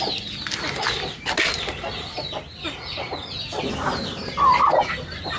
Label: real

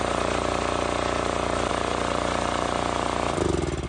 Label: real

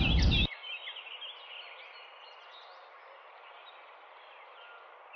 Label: real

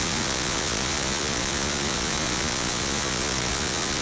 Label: fake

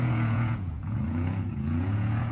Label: fake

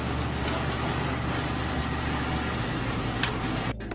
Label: real